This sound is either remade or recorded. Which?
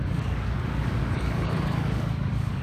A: remade